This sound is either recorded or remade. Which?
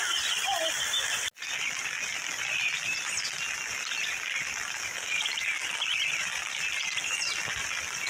recorded